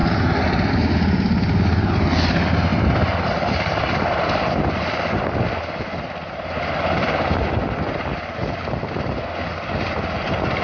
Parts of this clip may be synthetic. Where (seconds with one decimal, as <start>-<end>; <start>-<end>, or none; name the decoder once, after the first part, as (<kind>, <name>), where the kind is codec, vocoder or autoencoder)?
0.7-8.4 (vocoder, BigVGAN v2); 9.5-10.6